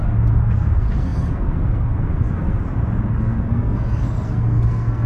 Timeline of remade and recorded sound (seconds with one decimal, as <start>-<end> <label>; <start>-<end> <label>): 0.0-2.6 remade; 2.6-3.1 recorded; 3.1-5.1 remade